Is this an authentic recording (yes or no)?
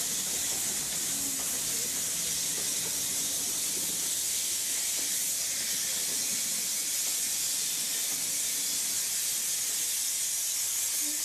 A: yes